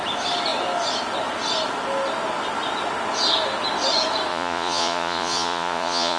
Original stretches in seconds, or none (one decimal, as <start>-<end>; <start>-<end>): 0.0-4.3